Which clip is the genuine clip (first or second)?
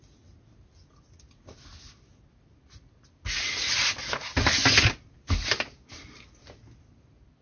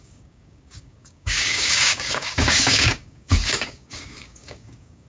first